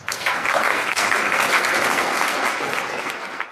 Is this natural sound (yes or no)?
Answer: no